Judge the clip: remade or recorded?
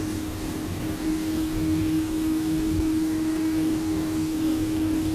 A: remade